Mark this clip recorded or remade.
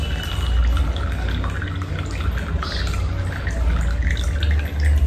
recorded